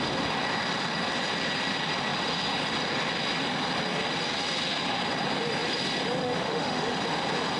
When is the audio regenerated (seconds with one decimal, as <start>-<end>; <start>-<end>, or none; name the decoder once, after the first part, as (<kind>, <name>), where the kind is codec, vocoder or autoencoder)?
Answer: 6.2-7.0 (autoencoder, DAC-VAE)